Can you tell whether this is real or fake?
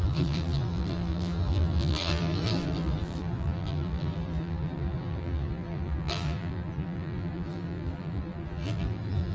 fake